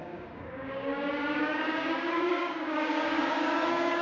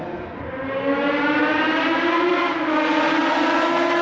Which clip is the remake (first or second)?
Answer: first